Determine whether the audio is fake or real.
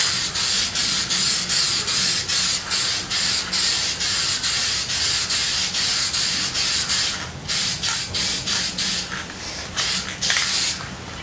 real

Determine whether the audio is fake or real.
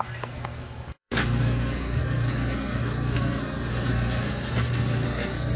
fake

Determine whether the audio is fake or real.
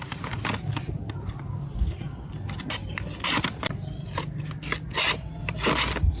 real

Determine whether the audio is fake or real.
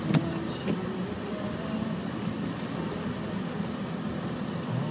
real